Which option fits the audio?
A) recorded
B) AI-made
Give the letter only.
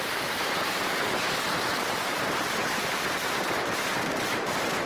B